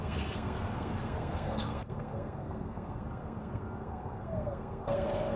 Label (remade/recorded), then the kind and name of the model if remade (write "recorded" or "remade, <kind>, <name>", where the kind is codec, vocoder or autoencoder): remade, codec, SNAC